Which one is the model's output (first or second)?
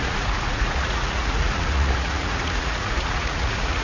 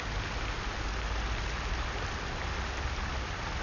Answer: first